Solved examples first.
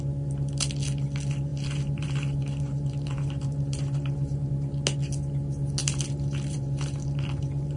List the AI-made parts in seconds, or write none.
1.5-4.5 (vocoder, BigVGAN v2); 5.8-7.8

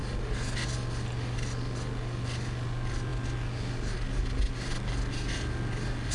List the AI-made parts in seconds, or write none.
none

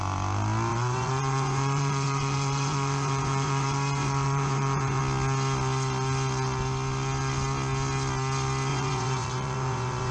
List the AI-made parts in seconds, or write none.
0.7-5.0 (vocoder, Vocos); 8.7-10.1

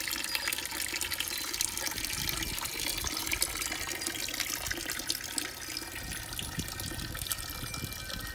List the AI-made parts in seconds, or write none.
none

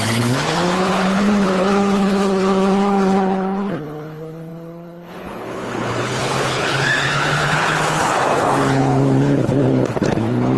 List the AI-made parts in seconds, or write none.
0.0-10.6 (codec, HILCodec)

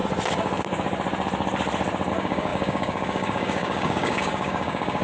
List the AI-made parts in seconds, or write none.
2.1-5.0 (codec, DAC)